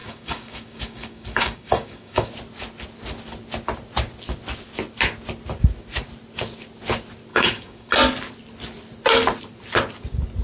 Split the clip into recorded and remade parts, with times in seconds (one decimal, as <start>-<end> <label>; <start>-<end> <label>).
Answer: 0.0-2.3 remade; 2.3-7.3 recorded; 7.3-7.9 remade; 7.9-10.4 recorded